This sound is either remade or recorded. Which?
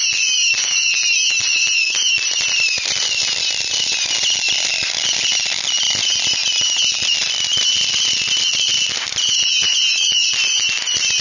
remade